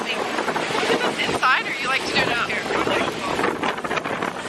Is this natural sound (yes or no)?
yes